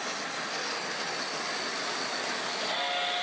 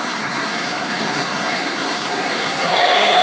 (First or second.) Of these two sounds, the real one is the first